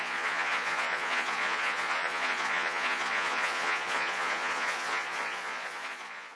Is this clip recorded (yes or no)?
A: no